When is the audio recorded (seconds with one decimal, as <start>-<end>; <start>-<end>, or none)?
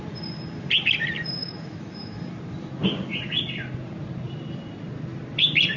0.0-1.4; 2.2-5.8